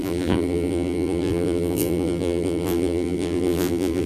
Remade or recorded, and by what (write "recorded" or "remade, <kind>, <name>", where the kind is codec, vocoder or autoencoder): remade, vocoder, BigVGAN v2